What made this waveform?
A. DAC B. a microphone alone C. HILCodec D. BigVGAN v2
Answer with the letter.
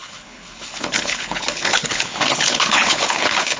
C